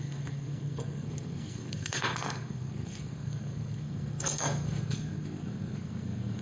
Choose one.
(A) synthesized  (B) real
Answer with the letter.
A